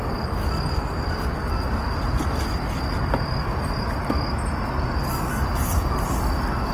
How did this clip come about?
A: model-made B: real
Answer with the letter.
B